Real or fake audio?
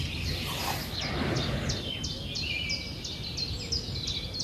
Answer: real